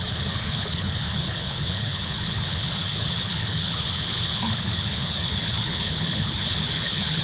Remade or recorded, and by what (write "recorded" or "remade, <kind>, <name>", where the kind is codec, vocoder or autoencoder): remade, codec, HILCodec